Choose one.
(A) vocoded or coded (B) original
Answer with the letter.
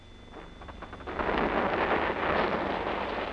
B